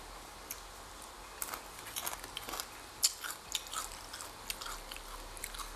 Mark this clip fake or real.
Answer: real